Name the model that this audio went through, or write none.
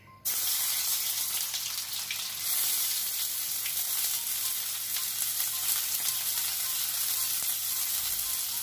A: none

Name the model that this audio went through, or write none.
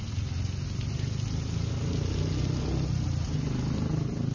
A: none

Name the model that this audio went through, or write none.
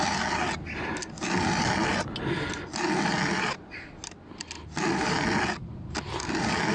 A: none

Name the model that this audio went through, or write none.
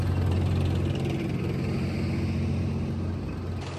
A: none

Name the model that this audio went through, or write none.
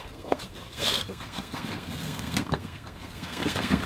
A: codec, SNAC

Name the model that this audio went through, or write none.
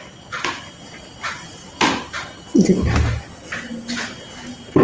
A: none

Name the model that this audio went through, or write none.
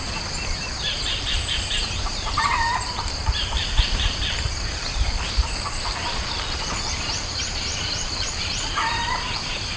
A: vocoder, BigVGAN v2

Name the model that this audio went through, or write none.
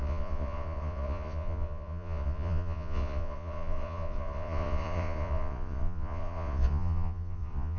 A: vocoder, Vocos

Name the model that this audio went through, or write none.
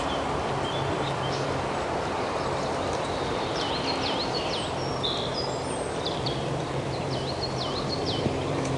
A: vocoder, BigVGAN v2